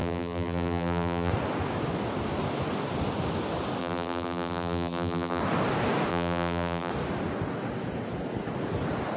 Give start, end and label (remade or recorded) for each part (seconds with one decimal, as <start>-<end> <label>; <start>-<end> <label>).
0.0-1.3 remade; 1.3-3.8 recorded; 3.8-5.4 remade; 5.4-6.1 recorded; 6.1-6.9 remade; 6.9-9.2 recorded